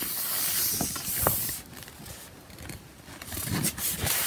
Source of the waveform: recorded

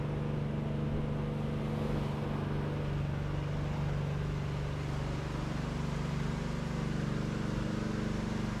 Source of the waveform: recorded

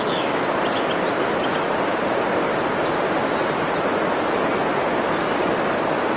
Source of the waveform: recorded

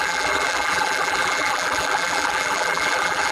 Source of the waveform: remade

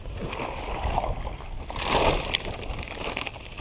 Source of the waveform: remade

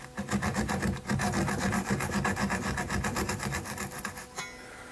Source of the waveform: recorded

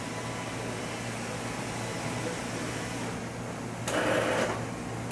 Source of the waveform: recorded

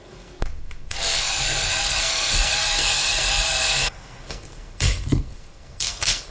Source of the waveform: remade